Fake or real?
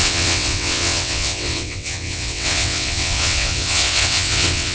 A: fake